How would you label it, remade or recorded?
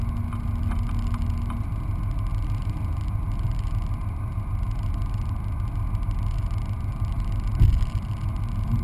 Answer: recorded